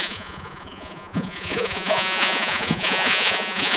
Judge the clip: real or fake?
fake